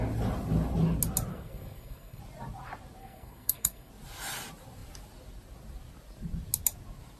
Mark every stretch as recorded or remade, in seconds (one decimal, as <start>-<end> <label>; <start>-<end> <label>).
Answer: 0.0-1.3 recorded; 1.3-2.2 remade; 2.2-3.0 recorded; 3.0-3.9 remade; 3.9-7.2 recorded